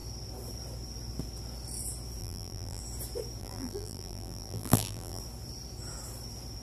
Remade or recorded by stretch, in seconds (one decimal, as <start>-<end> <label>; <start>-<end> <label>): 0.0-2.2 recorded; 2.2-2.8 remade; 2.8-3.4 recorded; 3.4-5.2 remade; 5.2-6.6 recorded

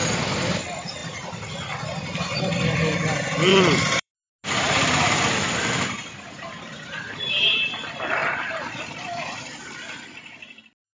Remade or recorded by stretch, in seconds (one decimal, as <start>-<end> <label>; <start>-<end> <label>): 0.0-3.5 recorded; 3.5-4.1 remade; 4.1-8.2 recorded; 8.2-8.7 remade; 8.7-10.9 recorded

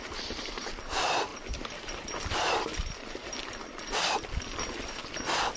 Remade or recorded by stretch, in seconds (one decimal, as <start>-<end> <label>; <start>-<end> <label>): 0.0-5.6 remade

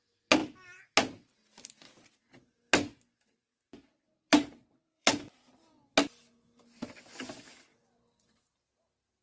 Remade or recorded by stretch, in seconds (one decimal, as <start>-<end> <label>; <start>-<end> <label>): 0.0-4.3 recorded; 4.3-5.8 remade; 5.8-9.2 recorded